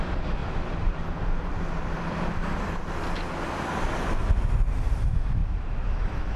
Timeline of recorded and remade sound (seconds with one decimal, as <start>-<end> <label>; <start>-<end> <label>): 0.0-0.4 recorded; 0.4-2.6 remade; 2.6-5.4 recorded; 5.4-6.0 remade; 6.0-6.4 recorded